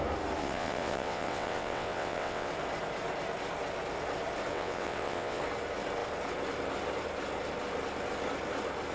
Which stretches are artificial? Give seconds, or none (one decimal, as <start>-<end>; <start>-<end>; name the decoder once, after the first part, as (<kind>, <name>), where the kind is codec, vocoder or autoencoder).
0.4-2.5 (vocoder, WaveNeXt); 4.5-5.4